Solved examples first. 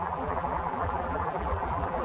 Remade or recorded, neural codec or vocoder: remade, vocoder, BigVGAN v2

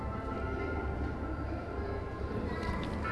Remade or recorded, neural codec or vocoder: recorded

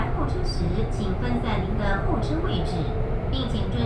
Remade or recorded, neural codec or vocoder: recorded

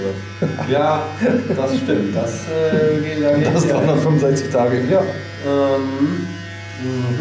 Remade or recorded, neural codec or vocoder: recorded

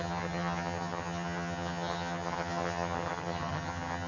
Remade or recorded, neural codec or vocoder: remade, vocoder, HiFi-GAN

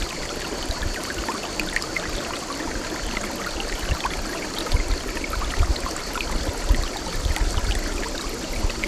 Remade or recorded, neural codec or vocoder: recorded